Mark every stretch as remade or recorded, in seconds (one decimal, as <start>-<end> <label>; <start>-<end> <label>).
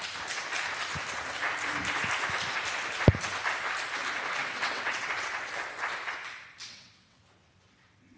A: 0.0-4.4 recorded; 4.4-5.1 remade; 5.1-6.6 recorded; 6.6-7.2 remade; 7.2-8.2 recorded